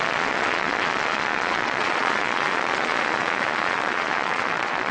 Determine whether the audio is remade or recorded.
remade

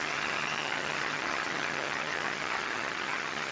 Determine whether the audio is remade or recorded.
remade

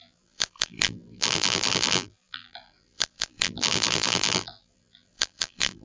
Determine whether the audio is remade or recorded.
remade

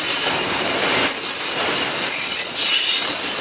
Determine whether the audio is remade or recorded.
recorded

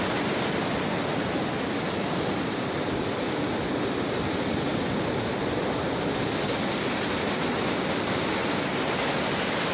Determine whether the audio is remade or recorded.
recorded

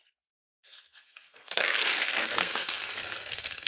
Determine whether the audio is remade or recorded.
remade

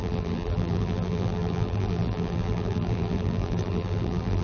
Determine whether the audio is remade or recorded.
remade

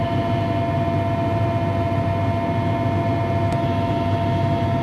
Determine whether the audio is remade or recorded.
recorded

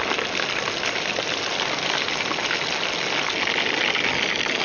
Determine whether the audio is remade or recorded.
recorded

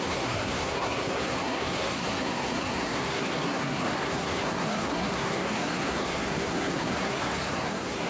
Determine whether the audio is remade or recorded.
remade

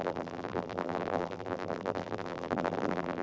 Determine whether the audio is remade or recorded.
remade